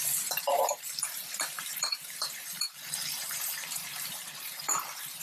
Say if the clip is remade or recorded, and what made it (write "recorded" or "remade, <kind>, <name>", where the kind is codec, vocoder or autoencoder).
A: remade, vocoder, BigVGAN v2